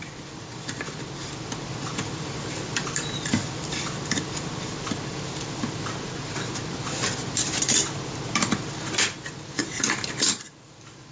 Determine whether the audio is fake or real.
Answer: fake